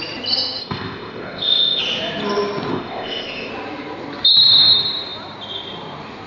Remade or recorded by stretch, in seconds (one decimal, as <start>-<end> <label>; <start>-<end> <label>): 0.0-0.6 recorded; 0.6-1.8 remade; 1.8-2.7 recorded; 2.7-3.5 remade; 3.5-6.3 recorded